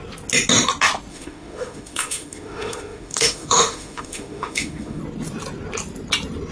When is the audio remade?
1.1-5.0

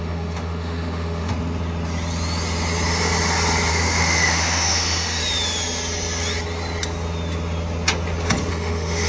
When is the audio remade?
0.0-1.3; 3.7-5.2; 8.5-9.1

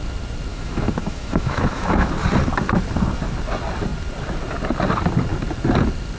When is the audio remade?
0.5-2.1